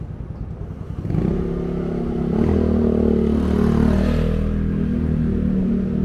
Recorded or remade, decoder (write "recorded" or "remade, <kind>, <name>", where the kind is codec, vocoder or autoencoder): recorded